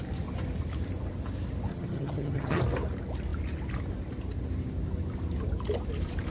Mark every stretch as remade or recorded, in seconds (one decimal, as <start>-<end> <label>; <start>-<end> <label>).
0.0-1.7 recorded; 1.7-2.6 remade; 2.6-6.3 recorded